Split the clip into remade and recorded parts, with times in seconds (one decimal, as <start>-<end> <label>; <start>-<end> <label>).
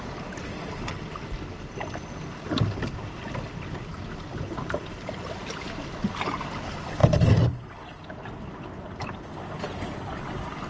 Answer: 0.0-10.7 recorded